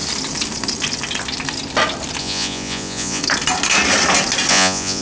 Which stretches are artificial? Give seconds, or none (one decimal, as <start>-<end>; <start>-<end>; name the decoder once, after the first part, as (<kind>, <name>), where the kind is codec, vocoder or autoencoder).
2.2-3.2 (vocoder, Vocos); 4.5-5.0

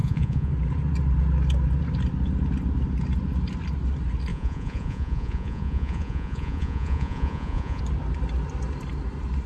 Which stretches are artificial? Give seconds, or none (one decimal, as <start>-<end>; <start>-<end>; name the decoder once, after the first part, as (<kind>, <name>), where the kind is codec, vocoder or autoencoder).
0.0-0.5 (vocoder, Vocos); 4.3-7.8

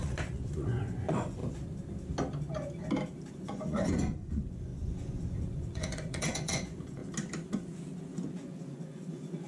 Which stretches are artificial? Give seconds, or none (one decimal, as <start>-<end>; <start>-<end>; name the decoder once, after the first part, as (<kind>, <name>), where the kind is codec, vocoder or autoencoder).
0.0-1.4 (vocoder, Vocos); 3.3-7.0; 8.0-9.5

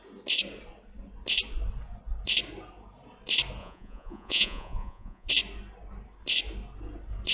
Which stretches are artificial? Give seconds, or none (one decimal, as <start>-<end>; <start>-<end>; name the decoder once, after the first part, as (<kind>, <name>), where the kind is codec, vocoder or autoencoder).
3.6-5.3 (vocoder, Vocos)